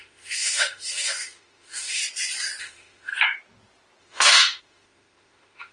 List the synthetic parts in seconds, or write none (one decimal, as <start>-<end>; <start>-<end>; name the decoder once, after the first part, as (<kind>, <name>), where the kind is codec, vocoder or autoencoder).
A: 0.0-2.0 (autoencoder, DAC-VAE); 2.6-3.1; 4.0-5.7